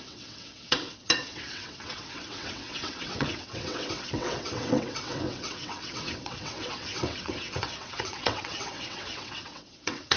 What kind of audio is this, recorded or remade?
remade